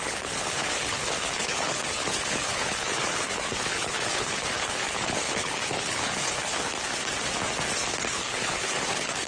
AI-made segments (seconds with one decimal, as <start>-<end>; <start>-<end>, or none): 0.0-6.7; 8.1-9.3